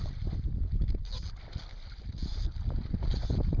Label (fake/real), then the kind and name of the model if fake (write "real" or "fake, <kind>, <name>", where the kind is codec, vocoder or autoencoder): real